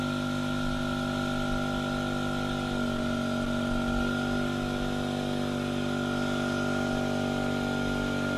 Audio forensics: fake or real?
real